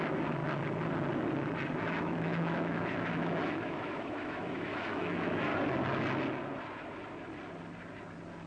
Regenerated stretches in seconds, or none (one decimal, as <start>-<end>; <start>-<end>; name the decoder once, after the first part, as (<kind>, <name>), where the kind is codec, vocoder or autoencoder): 0.0-0.4 (autoencoder, DAC-VAE); 2.0-5.5